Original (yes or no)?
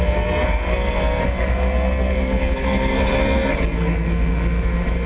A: no